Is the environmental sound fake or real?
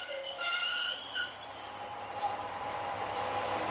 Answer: fake